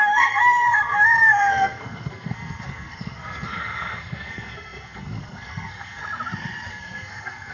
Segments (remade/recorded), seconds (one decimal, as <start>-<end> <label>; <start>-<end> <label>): 0.0-6.0 remade; 6.0-6.7 recorded; 6.7-7.5 remade

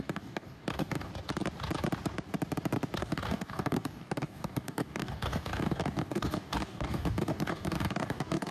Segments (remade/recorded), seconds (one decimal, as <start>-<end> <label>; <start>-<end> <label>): 0.0-1.1 remade; 1.1-3.0 recorded; 3.0-8.5 remade

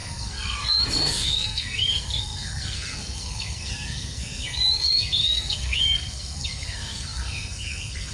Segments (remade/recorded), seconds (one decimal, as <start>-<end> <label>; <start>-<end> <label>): 0.0-8.1 remade

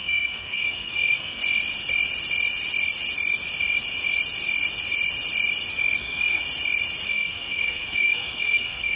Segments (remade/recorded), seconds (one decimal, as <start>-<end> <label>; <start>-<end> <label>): 0.0-1.4 remade; 1.4-6.0 recorded; 6.0-6.4 remade; 6.4-7.1 recorded; 7.1-9.0 remade

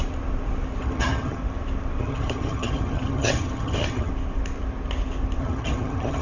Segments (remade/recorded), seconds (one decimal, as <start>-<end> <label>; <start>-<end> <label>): 0.0-0.8 recorded; 0.8-1.4 remade; 1.4-2.0 recorded; 2.0-4.1 remade; 4.1-5.4 recorded; 5.4-6.2 remade

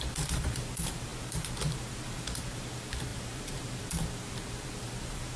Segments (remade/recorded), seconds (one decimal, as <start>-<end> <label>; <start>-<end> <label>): 0.0-5.4 remade